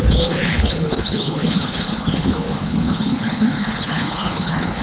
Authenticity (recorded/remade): remade